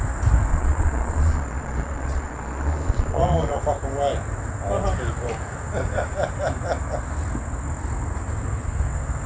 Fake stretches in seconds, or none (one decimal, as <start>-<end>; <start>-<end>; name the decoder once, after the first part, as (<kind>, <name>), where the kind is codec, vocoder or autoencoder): 0.5-3.6 (vocoder, Vocos)